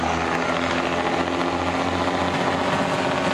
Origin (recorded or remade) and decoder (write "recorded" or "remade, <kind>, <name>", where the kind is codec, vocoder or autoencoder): recorded